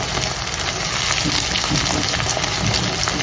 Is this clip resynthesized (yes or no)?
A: no